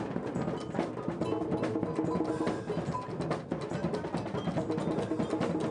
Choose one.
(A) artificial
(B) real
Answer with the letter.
B